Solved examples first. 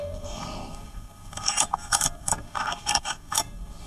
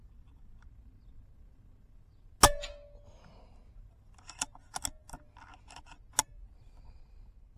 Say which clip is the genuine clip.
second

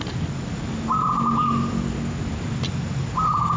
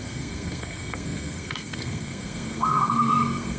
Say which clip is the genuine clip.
first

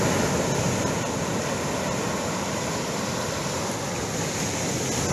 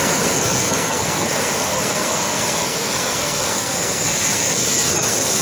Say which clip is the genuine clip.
first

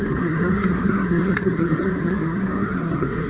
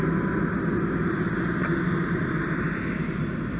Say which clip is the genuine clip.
second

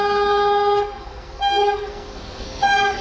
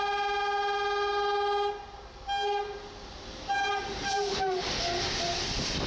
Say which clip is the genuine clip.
second